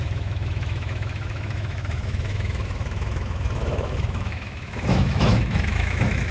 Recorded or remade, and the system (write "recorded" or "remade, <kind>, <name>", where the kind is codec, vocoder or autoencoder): remade, autoencoder, DAC-VAE